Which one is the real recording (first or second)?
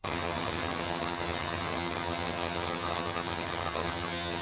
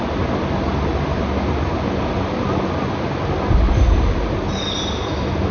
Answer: second